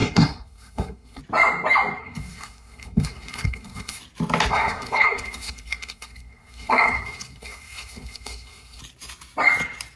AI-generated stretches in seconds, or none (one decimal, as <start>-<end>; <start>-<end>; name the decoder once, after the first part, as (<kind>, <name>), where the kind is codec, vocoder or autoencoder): 0.0-1.2 (codec, SNAC); 2.0-4.0; 4.5-8.8